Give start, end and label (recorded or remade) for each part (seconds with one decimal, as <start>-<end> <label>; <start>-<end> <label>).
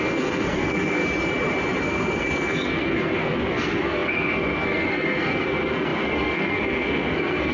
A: 0.0-1.0 remade; 1.0-1.8 recorded; 1.8-7.5 remade